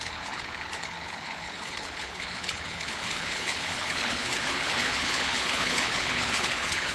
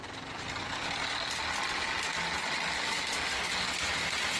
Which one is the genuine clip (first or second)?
second